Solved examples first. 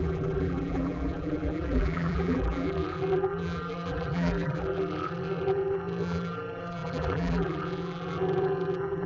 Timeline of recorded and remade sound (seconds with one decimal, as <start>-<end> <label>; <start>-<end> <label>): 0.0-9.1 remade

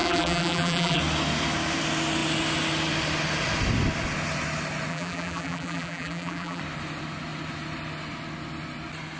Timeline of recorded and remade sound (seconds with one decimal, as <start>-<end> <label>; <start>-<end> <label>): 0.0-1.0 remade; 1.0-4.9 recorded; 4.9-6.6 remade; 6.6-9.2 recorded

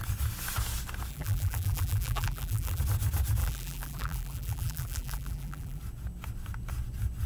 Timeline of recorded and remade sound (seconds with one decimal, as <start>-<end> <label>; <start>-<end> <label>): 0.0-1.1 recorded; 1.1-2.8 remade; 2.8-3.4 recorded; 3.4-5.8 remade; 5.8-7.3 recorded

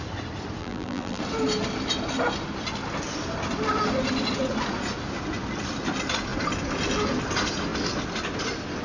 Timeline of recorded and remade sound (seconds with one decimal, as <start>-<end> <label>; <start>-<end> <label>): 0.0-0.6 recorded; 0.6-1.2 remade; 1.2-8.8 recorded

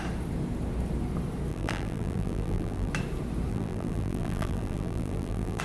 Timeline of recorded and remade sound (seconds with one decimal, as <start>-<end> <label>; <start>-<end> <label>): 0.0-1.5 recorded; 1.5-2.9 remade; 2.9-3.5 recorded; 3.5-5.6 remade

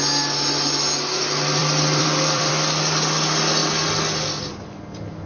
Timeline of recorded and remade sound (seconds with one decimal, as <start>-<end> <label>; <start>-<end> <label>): 0.0-1.6 recorded; 1.6-2.5 remade; 2.5-5.3 recorded

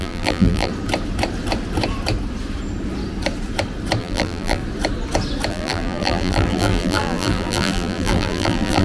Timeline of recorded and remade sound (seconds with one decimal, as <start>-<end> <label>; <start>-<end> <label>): 0.0-0.7 remade; 0.7-4.0 recorded; 4.0-4.6 remade; 4.6-5.5 recorded; 5.5-8.8 remade